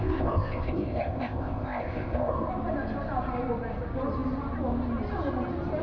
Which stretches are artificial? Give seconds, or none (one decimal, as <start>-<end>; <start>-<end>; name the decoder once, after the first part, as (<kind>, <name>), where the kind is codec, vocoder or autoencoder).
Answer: 0.0-2.5 (codec, ZipCodec)